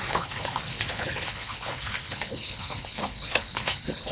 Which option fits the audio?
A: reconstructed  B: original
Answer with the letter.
A